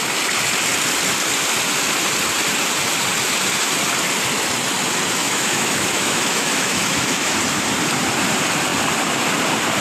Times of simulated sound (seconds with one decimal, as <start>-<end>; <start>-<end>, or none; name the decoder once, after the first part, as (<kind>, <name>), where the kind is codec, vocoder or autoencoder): 5.2-7.3 (autoencoder, DAC-VAE)